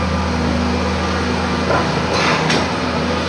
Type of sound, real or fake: real